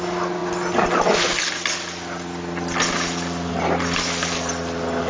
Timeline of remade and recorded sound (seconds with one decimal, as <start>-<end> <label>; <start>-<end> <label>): 0.0-5.1 recorded